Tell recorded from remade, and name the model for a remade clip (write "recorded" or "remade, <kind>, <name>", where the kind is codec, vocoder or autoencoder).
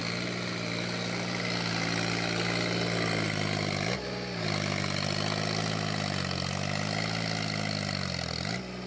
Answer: recorded